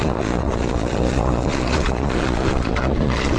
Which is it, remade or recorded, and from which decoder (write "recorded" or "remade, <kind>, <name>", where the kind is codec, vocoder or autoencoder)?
remade, vocoder, Vocos